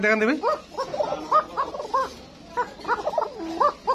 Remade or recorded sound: recorded